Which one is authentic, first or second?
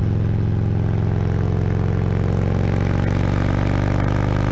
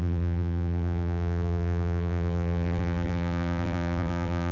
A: first